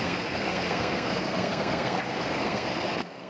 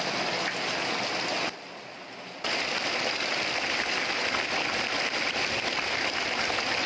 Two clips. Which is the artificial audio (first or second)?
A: first